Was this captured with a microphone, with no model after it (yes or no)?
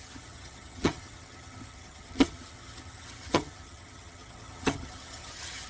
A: no